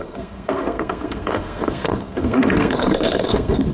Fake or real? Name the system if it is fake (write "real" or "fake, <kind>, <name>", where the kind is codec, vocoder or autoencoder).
fake, codec, SNAC